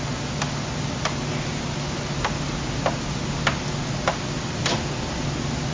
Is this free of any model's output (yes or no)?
yes